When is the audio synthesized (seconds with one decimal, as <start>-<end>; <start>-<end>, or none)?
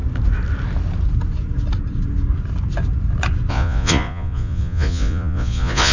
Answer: 3.5-5.9